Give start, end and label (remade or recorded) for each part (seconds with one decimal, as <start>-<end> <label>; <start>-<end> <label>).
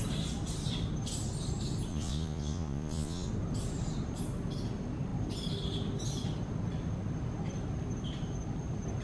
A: 0.0-1.9 recorded; 1.9-3.3 remade; 3.3-9.0 recorded